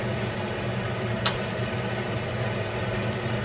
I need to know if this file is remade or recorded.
recorded